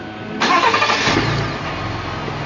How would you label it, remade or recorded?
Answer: recorded